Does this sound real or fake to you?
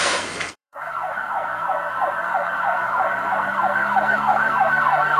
fake